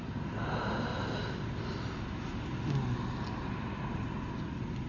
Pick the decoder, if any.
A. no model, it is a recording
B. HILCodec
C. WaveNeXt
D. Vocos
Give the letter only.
A